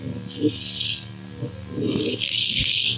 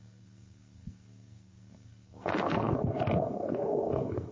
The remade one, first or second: second